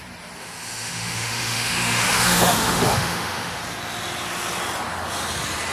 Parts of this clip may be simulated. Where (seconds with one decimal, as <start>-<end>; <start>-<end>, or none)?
0.4-3.6